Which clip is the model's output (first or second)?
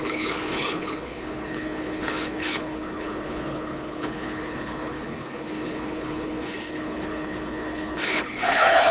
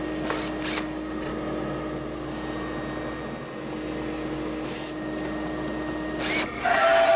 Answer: first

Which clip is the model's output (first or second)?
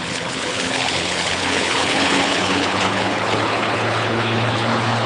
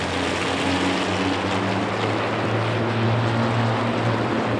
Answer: first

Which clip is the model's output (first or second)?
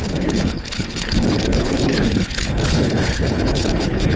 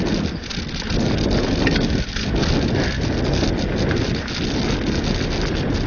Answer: first